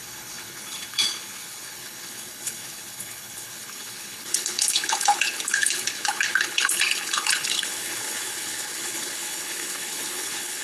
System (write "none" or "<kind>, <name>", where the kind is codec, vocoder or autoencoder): codec, HILCodec